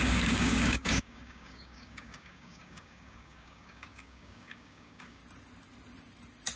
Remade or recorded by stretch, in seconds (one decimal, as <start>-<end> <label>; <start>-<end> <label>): 0.0-5.2 remade; 5.2-6.6 recorded